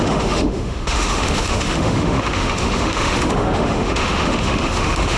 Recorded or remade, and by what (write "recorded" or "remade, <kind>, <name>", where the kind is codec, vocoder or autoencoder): remade, autoencoder, DAC-VAE